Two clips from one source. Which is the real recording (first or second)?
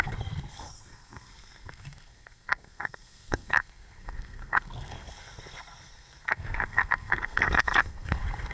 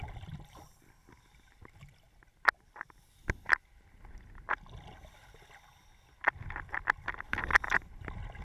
second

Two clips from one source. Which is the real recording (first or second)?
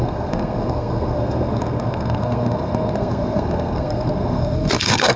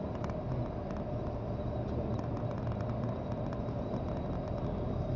second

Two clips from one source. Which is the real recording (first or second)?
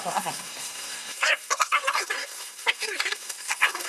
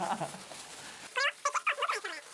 second